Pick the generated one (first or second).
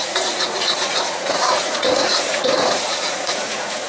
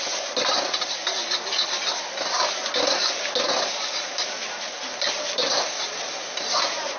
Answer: first